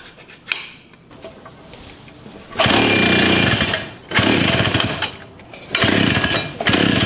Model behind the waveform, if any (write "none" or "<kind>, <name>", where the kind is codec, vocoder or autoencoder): none